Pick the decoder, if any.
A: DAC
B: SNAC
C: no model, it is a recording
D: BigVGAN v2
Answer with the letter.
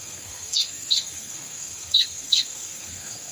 B